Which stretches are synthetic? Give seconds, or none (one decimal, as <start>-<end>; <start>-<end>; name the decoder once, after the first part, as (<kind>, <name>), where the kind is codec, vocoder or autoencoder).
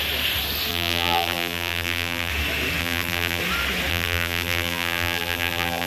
0.7-2.3 (vocoder, BigVGAN v2); 2.8-3.4; 3.9-5.9